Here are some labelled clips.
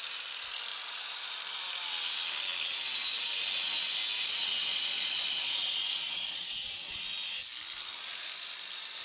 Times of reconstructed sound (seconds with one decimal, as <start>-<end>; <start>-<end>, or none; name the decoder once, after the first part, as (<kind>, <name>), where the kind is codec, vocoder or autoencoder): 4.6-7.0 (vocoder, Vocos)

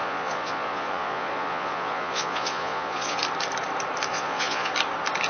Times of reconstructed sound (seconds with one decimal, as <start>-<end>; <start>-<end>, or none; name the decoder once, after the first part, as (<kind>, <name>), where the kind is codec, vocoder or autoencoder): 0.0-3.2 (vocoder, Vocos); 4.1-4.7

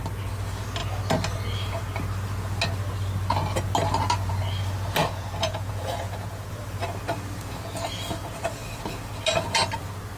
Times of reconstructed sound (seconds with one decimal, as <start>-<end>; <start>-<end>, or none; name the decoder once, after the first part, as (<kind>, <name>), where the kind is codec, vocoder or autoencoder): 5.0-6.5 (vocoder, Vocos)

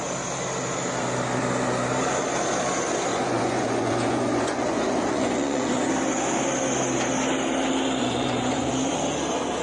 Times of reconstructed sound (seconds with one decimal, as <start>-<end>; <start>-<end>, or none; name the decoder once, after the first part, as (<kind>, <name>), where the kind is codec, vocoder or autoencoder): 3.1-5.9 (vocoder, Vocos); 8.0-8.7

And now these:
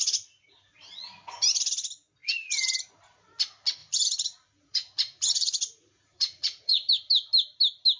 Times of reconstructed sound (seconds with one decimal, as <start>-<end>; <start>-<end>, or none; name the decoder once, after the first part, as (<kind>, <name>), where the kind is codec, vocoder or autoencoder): 2.2-2.9 (vocoder, Vocos); 3.8-6.9

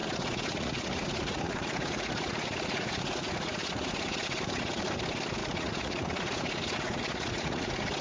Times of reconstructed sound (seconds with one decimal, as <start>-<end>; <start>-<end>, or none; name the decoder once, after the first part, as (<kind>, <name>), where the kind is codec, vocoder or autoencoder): 0.0-4.8 (vocoder, Vocos); 5.4-8.0